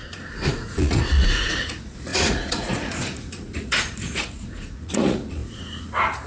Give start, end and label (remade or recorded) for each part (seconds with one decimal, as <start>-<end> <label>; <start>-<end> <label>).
0.0-6.3 remade